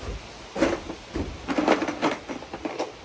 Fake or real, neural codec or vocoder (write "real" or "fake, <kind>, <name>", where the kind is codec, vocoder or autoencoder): real